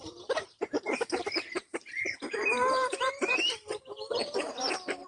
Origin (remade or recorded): remade